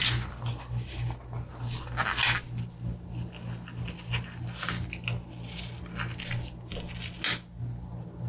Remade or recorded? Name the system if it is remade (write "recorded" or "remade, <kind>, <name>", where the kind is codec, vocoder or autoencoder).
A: recorded